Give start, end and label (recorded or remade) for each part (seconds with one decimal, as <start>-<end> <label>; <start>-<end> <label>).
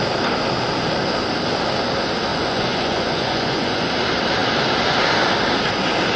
0.0-2.3 recorded; 2.3-3.9 remade; 3.9-6.2 recorded